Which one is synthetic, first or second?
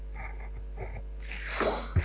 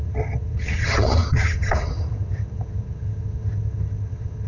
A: second